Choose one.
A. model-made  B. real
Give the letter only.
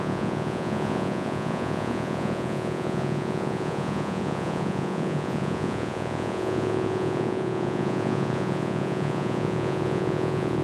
A